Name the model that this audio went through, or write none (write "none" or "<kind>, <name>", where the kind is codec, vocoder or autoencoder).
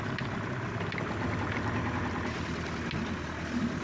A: none